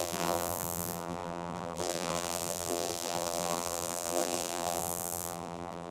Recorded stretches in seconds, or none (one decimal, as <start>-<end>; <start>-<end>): none